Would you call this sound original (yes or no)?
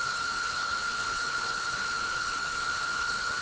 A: no